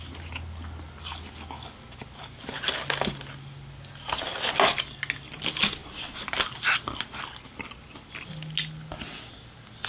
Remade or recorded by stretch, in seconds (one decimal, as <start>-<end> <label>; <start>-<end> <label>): 0.0-9.9 recorded